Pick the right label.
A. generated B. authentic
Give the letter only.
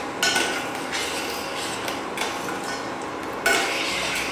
B